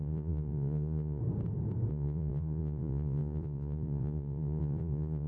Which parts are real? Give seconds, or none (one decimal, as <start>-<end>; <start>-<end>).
1.2-1.9